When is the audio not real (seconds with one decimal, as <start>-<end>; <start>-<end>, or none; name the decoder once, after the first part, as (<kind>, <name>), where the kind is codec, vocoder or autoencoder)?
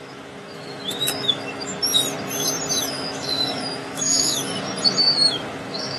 0.0-1.7 (autoencoder, DAC-VAE); 2.8-4.5; 5.0-6.0